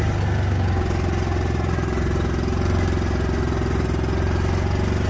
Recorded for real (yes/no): yes